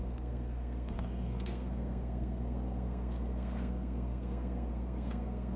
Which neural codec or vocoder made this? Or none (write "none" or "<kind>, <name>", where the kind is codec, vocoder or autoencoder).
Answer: codec, SNAC